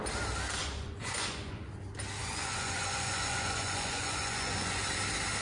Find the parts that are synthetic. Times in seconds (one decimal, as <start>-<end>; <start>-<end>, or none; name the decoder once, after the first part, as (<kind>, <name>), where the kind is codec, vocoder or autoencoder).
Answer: 0.6-1.8 (vocoder, Vocos); 2.2-4.8